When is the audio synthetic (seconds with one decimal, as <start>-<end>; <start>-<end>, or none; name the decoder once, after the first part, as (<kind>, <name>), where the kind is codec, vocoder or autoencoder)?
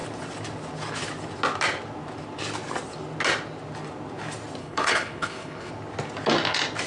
4.6-5.7 (codec, HILCodec)